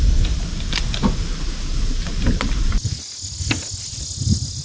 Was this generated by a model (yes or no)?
no